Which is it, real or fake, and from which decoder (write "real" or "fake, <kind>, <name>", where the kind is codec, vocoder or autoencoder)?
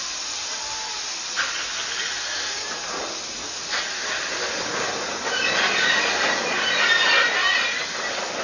real